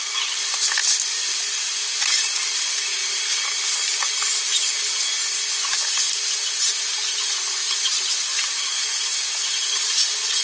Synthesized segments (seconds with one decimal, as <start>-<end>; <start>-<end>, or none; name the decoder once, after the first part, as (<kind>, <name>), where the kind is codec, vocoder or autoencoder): none